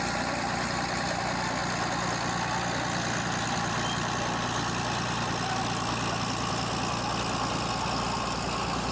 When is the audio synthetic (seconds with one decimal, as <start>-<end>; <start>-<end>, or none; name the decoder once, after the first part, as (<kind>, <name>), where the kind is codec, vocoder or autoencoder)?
none